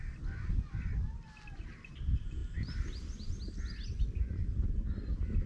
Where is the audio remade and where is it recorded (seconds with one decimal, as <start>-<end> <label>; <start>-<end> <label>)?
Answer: 0.0-5.5 recorded